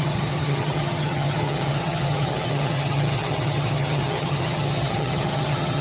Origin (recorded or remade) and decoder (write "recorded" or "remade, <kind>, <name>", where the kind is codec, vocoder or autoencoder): remade, vocoder, HiFi-GAN